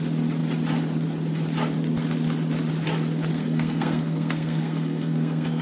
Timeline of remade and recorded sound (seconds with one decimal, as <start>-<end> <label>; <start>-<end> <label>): 0.0-3.3 recorded; 3.3-5.6 remade